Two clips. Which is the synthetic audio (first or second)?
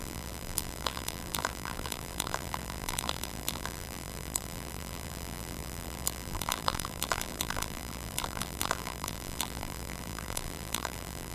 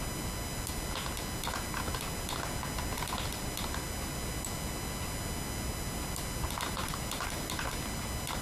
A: first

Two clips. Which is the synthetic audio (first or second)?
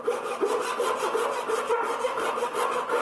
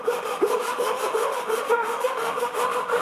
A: second